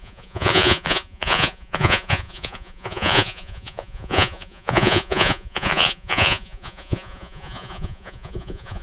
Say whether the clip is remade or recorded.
remade